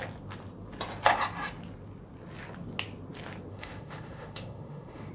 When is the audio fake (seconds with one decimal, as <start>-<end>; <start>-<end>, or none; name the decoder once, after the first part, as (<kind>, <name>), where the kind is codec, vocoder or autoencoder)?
3.5-5.1 (autoencoder, DAC-VAE)

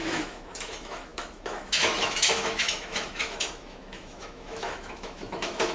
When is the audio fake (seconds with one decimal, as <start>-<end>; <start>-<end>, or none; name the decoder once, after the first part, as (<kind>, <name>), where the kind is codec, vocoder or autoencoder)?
0.0-5.7 (autoencoder, DAC-VAE)

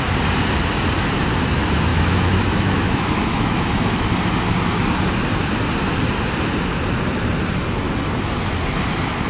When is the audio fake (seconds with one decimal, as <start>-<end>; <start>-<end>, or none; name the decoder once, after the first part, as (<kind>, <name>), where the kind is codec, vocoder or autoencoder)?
1.9-4.1 (autoencoder, DAC-VAE)

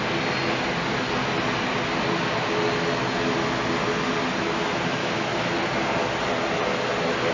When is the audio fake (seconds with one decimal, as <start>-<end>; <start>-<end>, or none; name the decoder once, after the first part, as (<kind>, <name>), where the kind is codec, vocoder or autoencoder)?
5.0-5.6 (autoencoder, DAC-VAE)

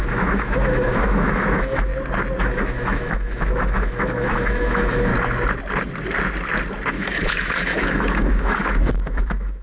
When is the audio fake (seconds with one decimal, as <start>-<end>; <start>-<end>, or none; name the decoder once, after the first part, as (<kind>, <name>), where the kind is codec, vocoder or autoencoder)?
0.0-1.9 (autoencoder, DAC-VAE); 2.4-5.1; 6.9-9.6